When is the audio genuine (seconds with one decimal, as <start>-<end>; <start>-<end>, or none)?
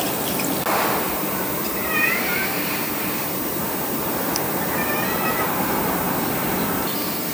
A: 0.0-7.3